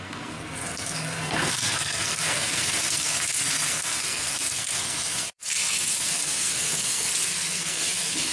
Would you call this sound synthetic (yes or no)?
yes